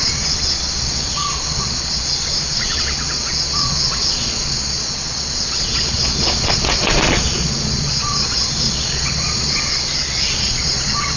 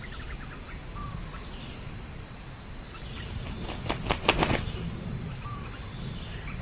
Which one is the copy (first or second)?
first